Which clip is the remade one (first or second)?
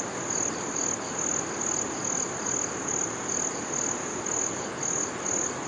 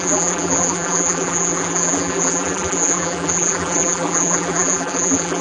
second